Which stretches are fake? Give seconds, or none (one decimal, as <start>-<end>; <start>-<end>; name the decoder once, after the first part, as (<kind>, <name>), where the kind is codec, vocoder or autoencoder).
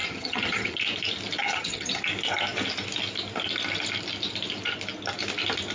0.0-0.8 (vocoder, HiFi-GAN); 1.4-2.0